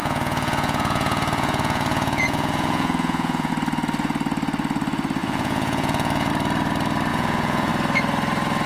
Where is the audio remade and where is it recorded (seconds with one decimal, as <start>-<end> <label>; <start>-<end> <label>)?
0.0-3.5 remade; 3.5-5.2 recorded; 5.2-6.3 remade; 6.3-7.1 recorded; 7.1-7.7 remade; 7.7-8.7 recorded